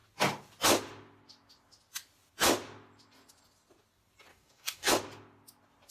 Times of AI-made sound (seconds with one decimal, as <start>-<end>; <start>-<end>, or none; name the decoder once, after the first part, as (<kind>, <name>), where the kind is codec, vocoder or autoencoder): 4.3-4.9 (codec, DAC)